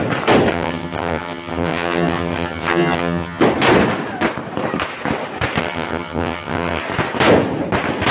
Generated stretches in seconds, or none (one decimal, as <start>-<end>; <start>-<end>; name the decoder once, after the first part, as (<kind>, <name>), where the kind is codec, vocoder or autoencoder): 0.5-3.4 (vocoder, HiFi-GAN); 5.6-6.8